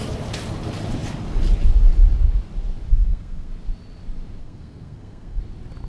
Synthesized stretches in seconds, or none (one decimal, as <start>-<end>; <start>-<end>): 2.9-3.5; 4.4-5.4